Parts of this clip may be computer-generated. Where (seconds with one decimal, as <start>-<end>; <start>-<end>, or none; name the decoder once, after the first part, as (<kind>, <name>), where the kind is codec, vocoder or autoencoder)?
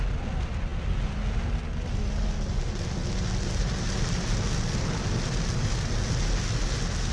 none